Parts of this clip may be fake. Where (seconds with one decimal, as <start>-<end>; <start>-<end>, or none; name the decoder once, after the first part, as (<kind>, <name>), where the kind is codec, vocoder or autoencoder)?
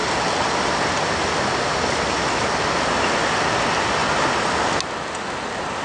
none